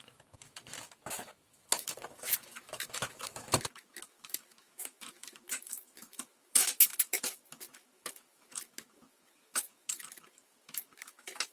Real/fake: fake